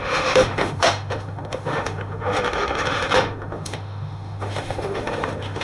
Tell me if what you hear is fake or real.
fake